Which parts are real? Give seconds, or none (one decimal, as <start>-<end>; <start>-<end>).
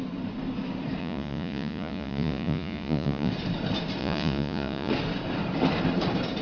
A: 0.0-1.0; 3.3-4.0; 4.9-6.4